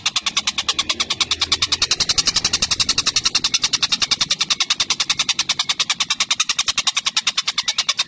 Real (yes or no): yes